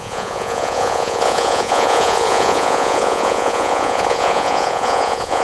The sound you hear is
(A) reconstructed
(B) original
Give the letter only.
A